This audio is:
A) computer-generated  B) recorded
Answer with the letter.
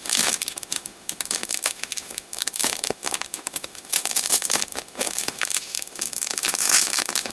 A